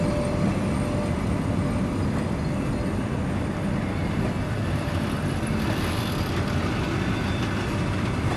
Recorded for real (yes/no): yes